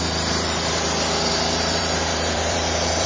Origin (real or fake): fake